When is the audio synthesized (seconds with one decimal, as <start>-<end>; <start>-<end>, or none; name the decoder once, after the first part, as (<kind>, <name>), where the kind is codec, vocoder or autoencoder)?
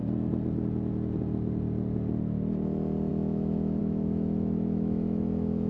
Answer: 3.1-5.7 (autoencoder, DAC-VAE)